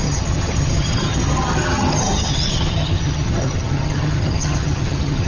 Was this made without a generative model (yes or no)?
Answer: no